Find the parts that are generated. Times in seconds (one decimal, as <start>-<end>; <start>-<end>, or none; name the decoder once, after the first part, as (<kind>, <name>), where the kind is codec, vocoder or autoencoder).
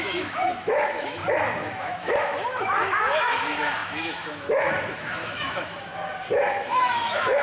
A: 0.0-1.2 (autoencoder, DAC-VAE); 1.8-5.9; 6.5-7.4